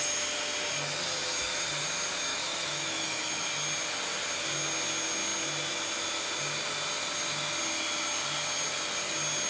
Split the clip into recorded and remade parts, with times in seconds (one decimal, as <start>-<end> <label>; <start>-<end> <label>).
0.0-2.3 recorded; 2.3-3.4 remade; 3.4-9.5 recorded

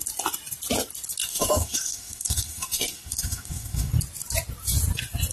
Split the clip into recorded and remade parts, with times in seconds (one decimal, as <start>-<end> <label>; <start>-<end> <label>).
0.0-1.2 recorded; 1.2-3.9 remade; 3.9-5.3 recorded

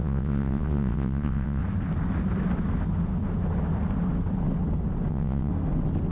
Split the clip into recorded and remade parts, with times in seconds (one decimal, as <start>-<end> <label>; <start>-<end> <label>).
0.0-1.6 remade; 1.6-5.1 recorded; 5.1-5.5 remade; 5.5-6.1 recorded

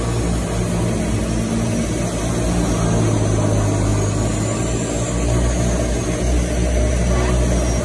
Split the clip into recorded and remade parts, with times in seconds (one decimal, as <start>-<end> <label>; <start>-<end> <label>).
0.0-7.8 recorded

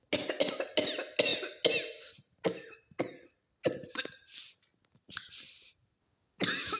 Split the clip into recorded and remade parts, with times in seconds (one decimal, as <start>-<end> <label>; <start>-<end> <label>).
0.0-6.8 recorded

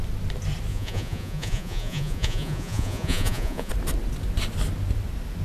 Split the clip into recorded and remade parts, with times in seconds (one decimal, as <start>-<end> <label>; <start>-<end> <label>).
0.0-0.7 recorded; 0.7-3.7 remade; 3.7-5.4 recorded

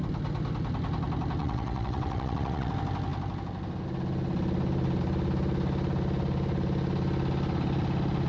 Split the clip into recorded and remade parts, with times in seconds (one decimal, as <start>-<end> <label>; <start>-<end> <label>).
0.0-1.4 recorded; 1.4-2.7 remade; 2.7-8.3 recorded